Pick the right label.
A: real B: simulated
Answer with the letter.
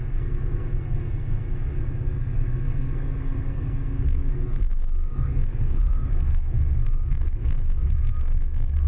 B